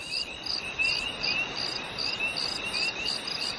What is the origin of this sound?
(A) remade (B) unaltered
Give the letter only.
B